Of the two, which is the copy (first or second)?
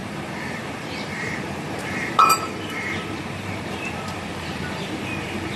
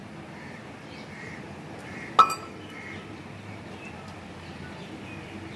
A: first